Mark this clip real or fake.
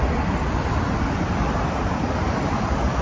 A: real